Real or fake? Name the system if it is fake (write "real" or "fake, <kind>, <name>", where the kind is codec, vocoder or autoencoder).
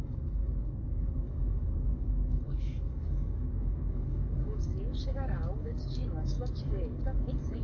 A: fake, codec, DAC